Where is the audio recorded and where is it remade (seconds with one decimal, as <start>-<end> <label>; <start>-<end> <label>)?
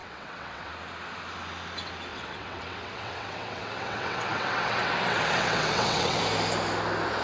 0.0-0.7 remade; 0.7-2.1 recorded; 2.1-6.2 remade; 6.2-7.2 recorded